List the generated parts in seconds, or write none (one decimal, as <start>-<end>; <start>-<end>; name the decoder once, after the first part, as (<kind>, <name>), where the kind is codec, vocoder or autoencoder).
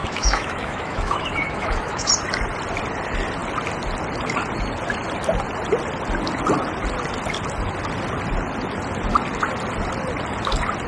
0.0-2.1 (autoencoder, DAC-VAE)